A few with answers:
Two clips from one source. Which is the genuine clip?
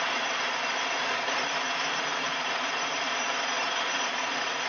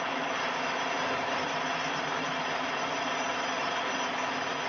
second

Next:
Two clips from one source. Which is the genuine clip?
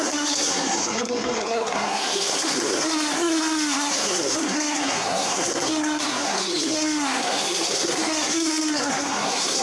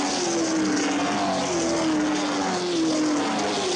second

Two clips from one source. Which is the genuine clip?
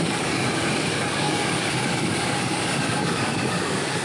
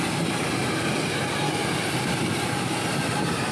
second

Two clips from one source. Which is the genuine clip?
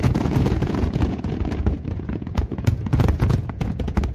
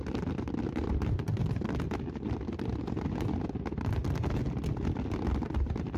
second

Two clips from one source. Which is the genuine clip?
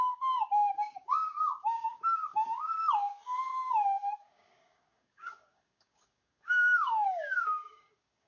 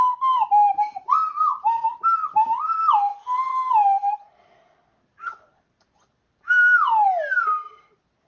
second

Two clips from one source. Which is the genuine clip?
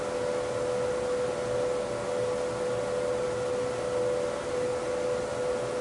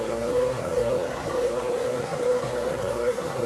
first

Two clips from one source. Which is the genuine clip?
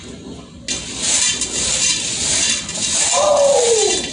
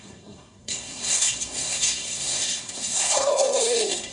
first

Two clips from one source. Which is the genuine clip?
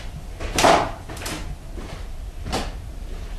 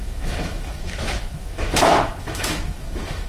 first